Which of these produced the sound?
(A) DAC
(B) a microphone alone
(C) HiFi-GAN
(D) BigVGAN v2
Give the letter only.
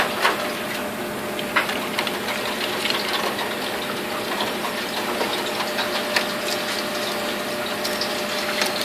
B